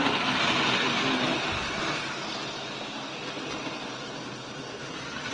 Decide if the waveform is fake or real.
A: real